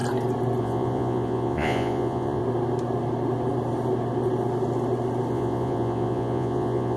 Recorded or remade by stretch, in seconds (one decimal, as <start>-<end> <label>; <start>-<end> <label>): 0.0-0.6 recorded; 0.6-2.4 remade; 2.4-5.3 recorded; 5.3-7.0 remade